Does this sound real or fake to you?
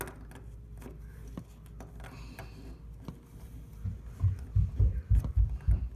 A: real